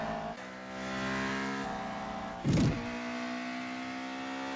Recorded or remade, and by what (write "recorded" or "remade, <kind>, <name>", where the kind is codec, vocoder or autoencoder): recorded